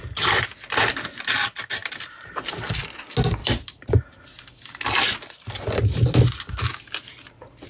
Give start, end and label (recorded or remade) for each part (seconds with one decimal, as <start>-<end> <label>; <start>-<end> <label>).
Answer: 0.0-1.8 recorded; 1.8-2.8 remade; 2.8-3.4 recorded; 3.4-4.0 remade; 4.0-7.7 recorded